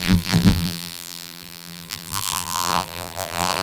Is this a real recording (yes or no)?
no